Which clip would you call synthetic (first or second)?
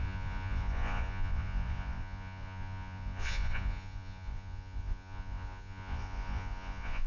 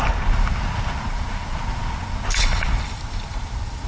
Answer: first